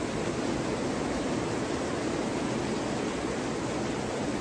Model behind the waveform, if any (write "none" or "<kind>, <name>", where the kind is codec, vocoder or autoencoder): none